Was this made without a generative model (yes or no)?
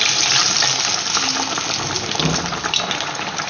yes